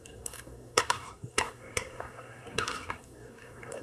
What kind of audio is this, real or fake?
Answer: fake